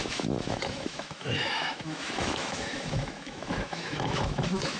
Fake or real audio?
fake